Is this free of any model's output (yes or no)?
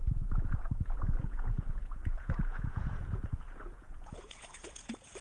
no